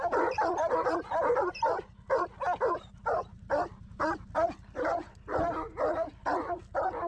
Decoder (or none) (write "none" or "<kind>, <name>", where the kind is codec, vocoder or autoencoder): none